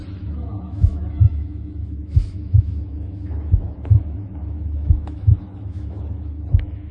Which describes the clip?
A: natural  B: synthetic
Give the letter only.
B